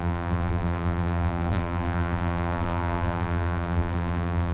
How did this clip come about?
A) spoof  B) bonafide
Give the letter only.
A